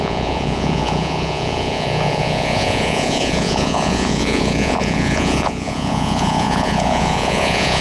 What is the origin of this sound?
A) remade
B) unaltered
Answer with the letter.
A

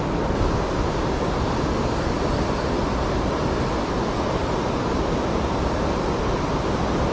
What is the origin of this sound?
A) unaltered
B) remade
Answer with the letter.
A